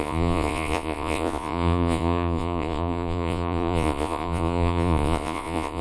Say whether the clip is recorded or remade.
remade